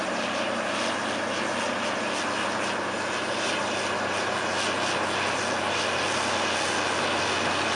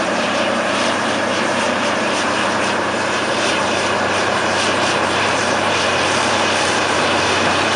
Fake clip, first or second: second